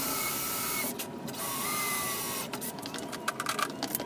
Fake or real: real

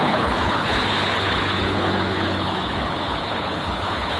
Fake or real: fake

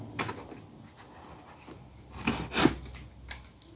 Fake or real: real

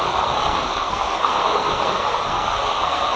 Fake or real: fake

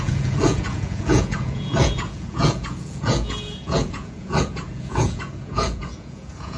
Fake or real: fake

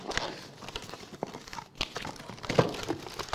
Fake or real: real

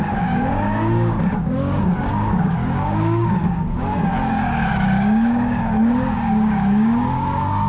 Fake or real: fake